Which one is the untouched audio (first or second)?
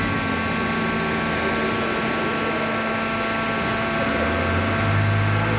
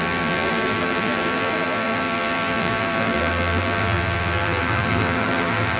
first